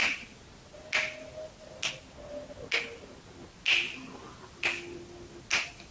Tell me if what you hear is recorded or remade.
recorded